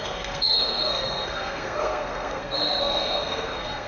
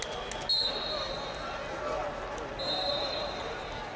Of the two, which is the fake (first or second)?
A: first